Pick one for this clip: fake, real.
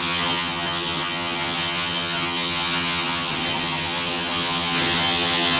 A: fake